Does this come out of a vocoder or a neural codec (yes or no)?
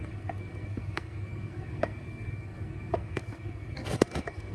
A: yes